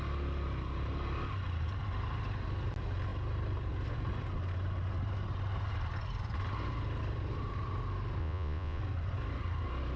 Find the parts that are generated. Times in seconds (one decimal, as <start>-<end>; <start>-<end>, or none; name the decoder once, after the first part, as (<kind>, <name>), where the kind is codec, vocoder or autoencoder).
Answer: 8.2-8.8 (vocoder, Vocos)